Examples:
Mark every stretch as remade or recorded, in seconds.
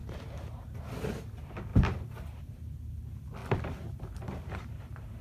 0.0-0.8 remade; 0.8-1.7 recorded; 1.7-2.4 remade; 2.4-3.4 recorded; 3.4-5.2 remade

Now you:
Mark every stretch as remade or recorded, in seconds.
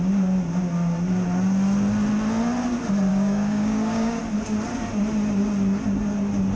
0.0-3.1 recorded; 3.1-4.2 remade; 4.2-6.6 recorded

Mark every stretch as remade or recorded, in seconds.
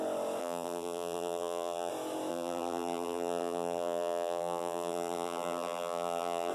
0.0-0.4 recorded; 0.4-1.9 remade; 1.9-2.3 recorded; 2.3-6.5 remade